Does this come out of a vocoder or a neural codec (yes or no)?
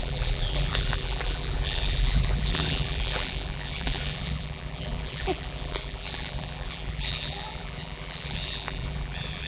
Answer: yes